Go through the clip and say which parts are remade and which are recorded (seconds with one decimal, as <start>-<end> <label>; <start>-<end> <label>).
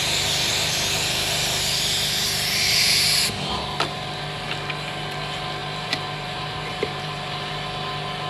0.0-3.3 remade; 3.3-5.6 recorded; 5.6-7.5 remade; 7.5-8.3 recorded